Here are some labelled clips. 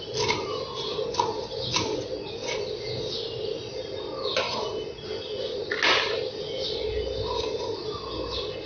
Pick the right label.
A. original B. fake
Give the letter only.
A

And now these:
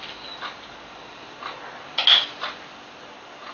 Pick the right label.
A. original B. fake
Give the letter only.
A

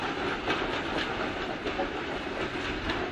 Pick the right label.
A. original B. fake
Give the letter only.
A